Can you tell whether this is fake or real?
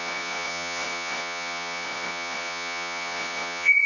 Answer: fake